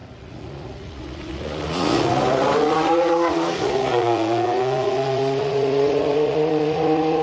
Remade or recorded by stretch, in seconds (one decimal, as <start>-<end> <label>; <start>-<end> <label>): 0.0-7.2 remade